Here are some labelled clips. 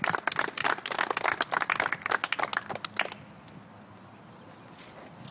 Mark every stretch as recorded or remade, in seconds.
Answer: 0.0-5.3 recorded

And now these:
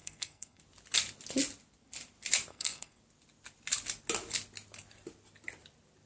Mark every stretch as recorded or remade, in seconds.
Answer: 0.0-0.6 remade; 0.6-2.5 recorded; 2.5-3.0 remade; 3.0-6.1 recorded

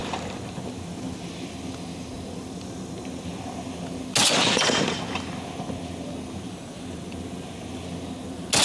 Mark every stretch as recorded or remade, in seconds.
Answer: 0.0-8.6 recorded